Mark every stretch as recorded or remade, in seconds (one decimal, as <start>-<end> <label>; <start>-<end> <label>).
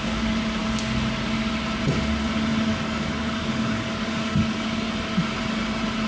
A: 0.0-2.7 recorded; 2.7-4.9 remade; 4.9-6.1 recorded